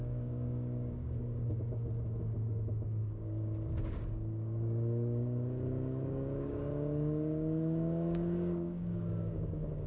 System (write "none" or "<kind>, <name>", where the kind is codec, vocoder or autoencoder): codec, DAC